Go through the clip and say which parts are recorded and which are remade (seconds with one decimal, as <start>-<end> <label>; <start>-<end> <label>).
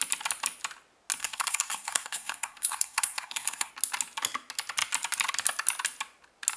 0.0-1.2 recorded; 1.2-3.7 remade; 3.7-6.6 recorded